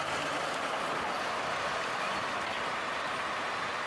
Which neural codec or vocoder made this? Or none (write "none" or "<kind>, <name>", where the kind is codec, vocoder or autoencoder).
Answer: none